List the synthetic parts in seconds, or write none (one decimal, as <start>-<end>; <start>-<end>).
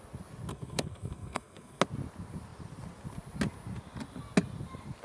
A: 0.5-1.8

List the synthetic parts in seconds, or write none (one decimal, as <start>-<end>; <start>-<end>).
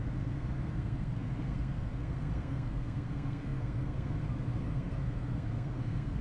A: 0.0-6.2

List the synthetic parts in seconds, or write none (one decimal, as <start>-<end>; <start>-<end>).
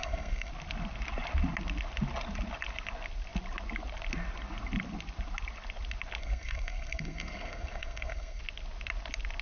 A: 0.0-0.5; 6.2-8.4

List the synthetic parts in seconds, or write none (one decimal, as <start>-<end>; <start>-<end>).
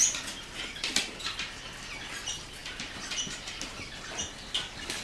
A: none